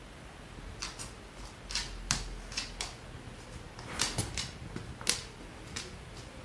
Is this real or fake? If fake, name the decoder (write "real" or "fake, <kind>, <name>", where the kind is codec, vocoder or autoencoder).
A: real